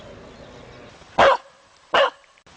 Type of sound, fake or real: real